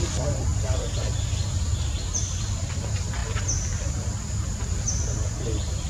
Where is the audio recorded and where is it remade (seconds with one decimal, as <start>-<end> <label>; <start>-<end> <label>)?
0.0-0.5 remade; 0.5-2.7 recorded; 2.7-5.9 remade